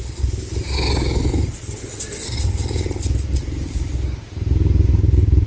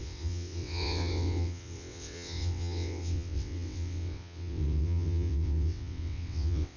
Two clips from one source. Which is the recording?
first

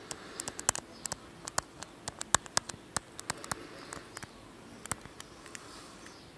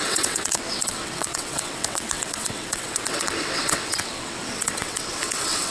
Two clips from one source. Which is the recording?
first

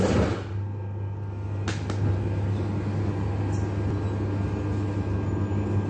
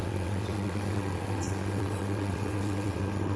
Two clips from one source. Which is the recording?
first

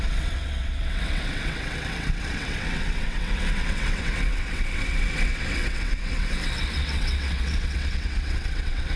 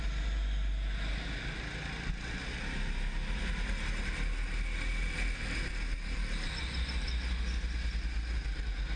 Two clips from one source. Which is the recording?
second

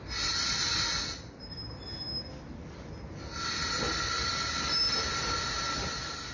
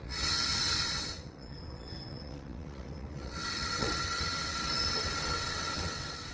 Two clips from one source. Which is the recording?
first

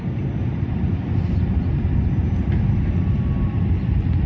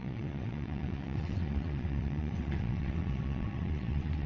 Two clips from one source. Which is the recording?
first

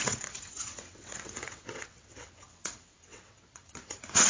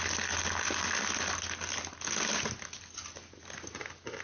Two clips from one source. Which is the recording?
second